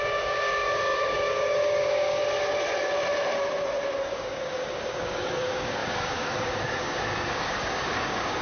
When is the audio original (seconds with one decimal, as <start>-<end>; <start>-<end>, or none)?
2.2-4.1